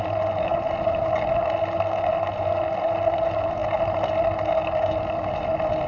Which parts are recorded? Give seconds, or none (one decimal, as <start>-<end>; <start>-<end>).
0.0-5.9